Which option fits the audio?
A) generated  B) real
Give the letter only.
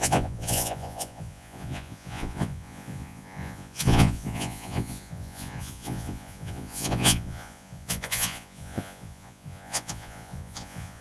A